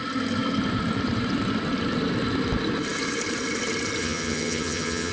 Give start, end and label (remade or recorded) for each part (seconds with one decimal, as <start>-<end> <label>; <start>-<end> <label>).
0.0-4.0 recorded; 4.0-5.1 remade